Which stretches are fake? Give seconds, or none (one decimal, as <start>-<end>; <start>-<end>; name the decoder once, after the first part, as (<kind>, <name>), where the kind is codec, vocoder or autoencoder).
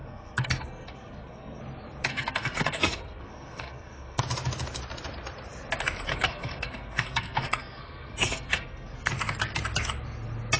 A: 0.0-1.6 (codec, SNAC); 2.1-4.2; 6.1-9.1